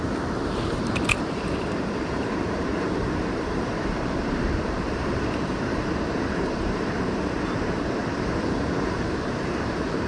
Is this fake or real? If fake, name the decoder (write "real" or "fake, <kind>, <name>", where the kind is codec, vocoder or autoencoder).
fake, vocoder, BigVGAN v2